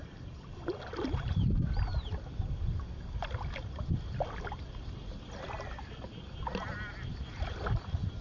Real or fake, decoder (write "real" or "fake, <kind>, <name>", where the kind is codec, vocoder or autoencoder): real